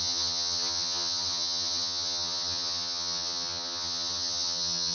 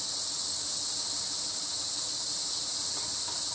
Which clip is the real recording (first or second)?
second